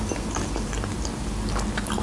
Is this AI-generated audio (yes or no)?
no